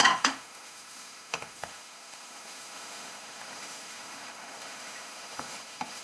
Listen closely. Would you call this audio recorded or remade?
remade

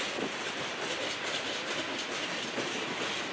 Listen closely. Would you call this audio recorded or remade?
recorded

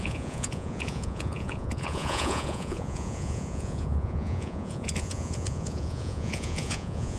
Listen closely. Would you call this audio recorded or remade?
remade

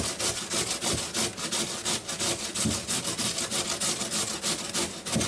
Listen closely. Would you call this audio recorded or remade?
recorded